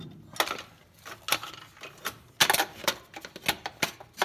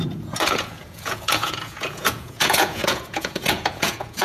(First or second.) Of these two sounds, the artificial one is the second